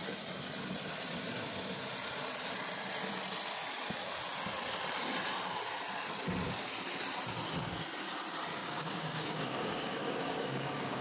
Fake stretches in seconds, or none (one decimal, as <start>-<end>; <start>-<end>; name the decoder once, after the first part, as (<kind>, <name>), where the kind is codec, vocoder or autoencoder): 8.6-11.0 (codec, DAC)